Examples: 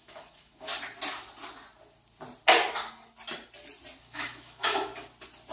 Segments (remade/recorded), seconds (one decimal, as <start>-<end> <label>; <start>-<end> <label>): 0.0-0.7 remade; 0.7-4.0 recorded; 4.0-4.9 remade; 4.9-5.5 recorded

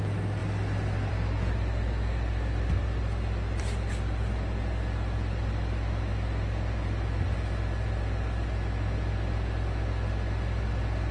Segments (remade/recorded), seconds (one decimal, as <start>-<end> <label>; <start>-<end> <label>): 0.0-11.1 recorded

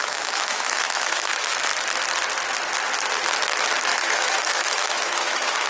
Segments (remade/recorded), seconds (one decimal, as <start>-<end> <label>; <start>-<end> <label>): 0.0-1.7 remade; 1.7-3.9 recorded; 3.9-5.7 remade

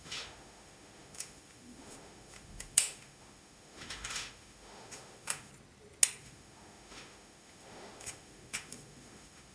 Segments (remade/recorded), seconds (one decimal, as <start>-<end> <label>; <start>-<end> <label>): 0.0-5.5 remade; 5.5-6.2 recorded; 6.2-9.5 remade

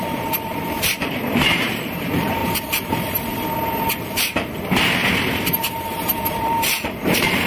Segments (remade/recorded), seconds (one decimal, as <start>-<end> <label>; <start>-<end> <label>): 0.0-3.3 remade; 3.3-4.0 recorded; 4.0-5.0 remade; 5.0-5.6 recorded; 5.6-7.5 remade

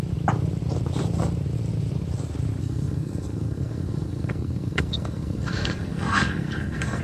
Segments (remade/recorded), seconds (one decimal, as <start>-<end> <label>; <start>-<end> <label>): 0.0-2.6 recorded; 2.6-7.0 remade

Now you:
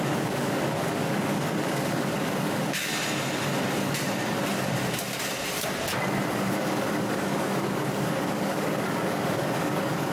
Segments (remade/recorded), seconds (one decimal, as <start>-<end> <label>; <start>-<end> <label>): 0.0-2.9 remade; 2.9-6.3 recorded; 6.3-10.1 remade

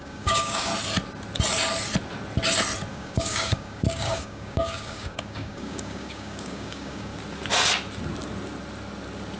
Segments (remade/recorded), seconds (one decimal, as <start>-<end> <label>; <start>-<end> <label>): 0.0-0.7 remade; 0.7-2.9 recorded; 2.9-7.1 remade; 7.1-9.4 recorded